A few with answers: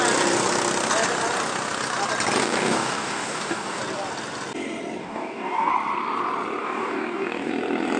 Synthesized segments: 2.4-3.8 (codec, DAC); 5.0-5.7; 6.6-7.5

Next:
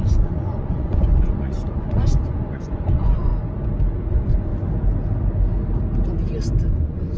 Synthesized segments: 0.0-3.3 (vocoder, Vocos); 4.1-4.5; 6.7-7.2

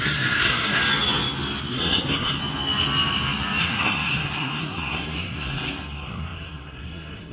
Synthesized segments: 0.0-0.8 (codec, SNAC); 1.7-2.4; 3.6-7.3

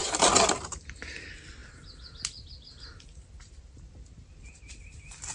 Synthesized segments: none

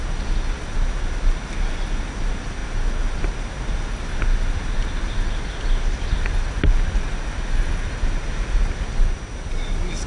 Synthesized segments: none

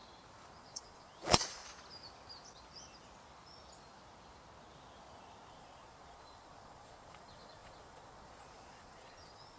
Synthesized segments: 0.6-1.6 (vocoder, Vocos); 5.5-9.6

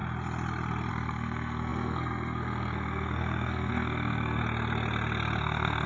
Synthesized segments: 0.9-4.4 (codec, SNAC); 5.4-5.9